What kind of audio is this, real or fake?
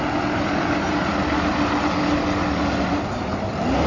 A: real